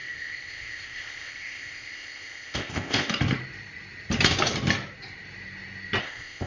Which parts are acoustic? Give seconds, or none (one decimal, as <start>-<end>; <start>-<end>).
3.1-6.0